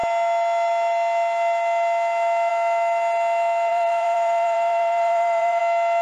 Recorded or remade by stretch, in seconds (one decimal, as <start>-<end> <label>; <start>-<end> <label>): 0.0-3.7 recorded; 3.7-5.6 remade; 5.6-6.0 recorded